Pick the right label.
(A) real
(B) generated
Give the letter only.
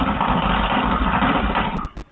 A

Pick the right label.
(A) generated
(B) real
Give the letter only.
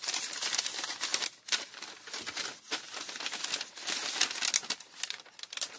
B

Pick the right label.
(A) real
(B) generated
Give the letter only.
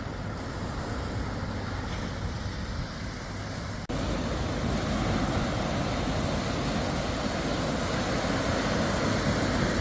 A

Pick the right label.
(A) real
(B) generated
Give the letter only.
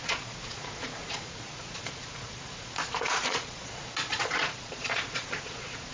B